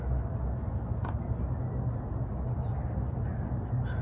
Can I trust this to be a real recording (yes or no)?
yes